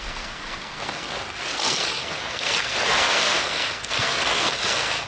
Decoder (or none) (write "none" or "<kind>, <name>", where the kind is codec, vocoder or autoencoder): codec, SNAC